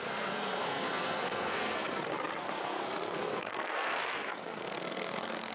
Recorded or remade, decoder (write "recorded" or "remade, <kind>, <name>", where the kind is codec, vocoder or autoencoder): remade, codec, SNAC